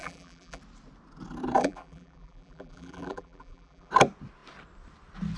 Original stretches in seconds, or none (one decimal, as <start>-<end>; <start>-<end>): 0.6-1.6; 3.9-5.4